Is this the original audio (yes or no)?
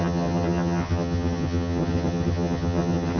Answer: no